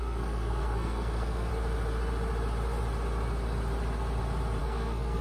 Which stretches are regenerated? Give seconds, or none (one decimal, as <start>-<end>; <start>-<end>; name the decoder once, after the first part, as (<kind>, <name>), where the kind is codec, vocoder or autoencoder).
0.0-1.5 (codec, SNAC); 4.6-5.2